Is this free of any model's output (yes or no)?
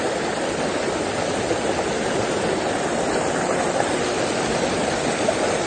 yes